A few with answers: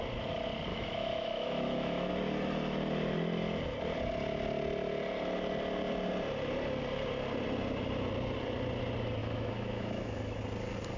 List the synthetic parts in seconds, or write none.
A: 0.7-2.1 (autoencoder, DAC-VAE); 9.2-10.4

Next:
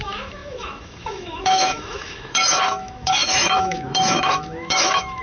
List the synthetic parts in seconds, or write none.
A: 0.0-5.2 (autoencoder, DAC-VAE)